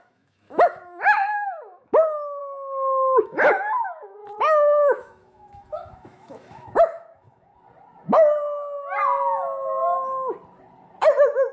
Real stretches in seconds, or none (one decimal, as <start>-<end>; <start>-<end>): 7.5-11.0